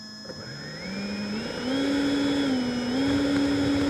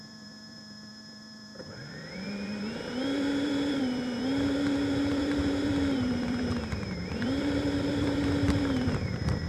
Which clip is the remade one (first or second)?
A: second